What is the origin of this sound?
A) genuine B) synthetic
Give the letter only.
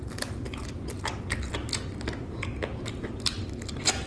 A